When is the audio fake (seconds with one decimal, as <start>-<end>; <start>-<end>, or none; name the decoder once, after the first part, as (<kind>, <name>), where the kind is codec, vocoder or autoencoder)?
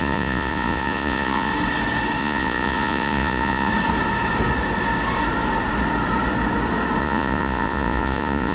0.0-1.5 (vocoder, Vocos); 2.2-3.7; 7.0-8.5